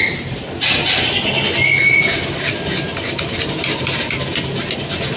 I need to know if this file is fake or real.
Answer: real